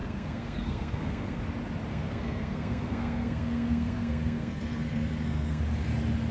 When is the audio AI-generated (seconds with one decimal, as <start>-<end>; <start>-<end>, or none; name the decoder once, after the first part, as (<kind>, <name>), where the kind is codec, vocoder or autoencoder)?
0.0-1.4 (codec, SNAC); 1.9-5.6